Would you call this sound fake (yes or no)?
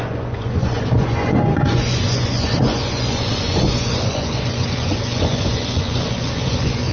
yes